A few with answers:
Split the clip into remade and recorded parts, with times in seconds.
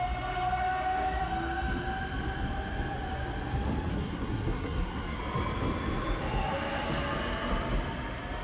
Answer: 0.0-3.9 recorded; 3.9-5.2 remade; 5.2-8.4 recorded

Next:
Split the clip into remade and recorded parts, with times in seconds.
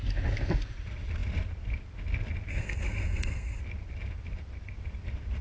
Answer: 0.0-2.5 recorded; 2.5-3.6 remade; 3.6-5.4 recorded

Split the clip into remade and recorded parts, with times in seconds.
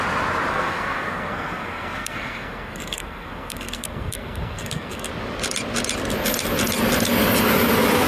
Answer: 0.0-0.5 recorded; 0.5-5.1 remade; 5.1-8.1 recorded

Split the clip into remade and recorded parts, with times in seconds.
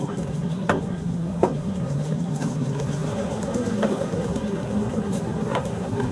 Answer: 0.0-6.1 remade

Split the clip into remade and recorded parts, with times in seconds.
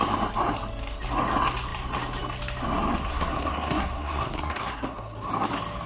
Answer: 0.0-3.0 recorded; 3.0-5.3 remade; 5.3-5.9 recorded